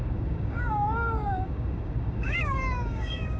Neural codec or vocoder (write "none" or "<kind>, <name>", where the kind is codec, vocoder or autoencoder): codec, DAC